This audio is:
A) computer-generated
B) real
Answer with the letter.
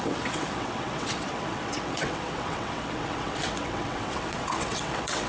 A